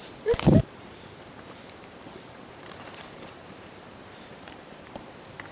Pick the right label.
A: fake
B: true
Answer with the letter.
A